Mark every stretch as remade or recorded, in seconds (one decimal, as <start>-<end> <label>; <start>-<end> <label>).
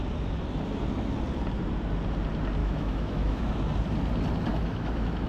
0.0-2.6 recorded; 2.6-3.7 remade; 3.7-4.5 recorded; 4.5-5.3 remade